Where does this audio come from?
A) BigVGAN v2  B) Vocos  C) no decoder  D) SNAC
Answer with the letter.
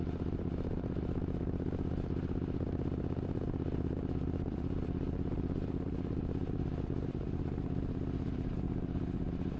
A